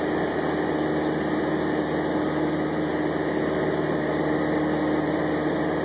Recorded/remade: recorded